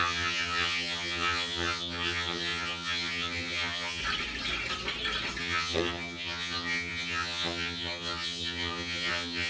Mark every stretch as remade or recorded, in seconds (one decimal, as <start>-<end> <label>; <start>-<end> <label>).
0.0-4.0 remade; 4.0-5.4 recorded; 5.4-9.5 remade